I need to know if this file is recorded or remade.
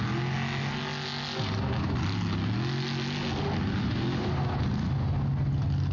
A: recorded